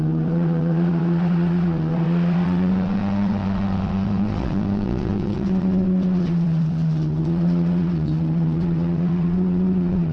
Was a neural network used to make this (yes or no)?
yes